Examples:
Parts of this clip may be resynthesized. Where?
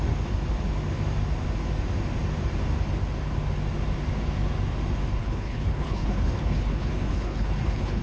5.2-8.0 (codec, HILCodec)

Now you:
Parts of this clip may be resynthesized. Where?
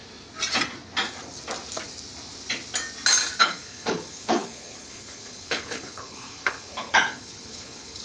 3.4-8.0 (codec, HILCodec)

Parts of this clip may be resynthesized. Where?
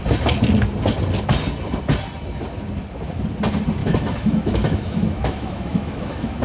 3.8-6.4 (autoencoder, DAC-VAE)